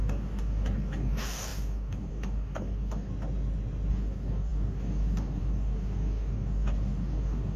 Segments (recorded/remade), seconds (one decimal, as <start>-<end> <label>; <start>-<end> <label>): 0.0-3.1 remade; 3.1-3.9 recorded; 3.9-7.6 remade

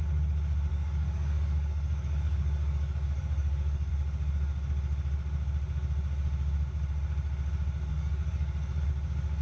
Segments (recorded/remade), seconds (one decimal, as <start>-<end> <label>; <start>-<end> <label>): 0.0-0.7 recorded; 0.7-3.9 remade; 3.9-7.9 recorded; 7.9-8.8 remade; 8.8-9.4 recorded